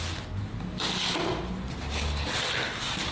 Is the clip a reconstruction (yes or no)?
no